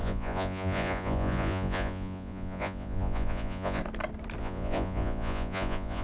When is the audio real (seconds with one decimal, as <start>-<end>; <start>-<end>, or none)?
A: 3.8-4.4